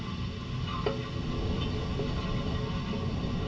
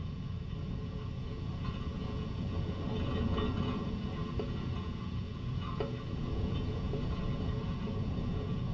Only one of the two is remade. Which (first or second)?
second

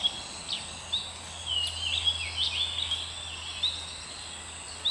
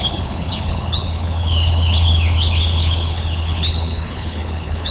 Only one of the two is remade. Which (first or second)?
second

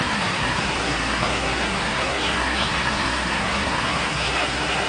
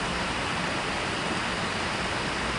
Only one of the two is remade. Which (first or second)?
first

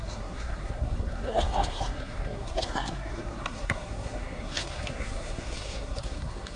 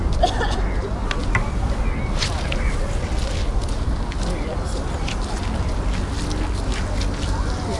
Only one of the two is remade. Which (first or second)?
first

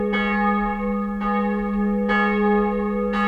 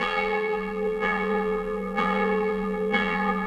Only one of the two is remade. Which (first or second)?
second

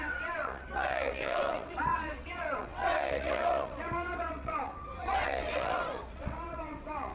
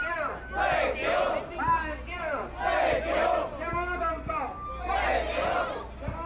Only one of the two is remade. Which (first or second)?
first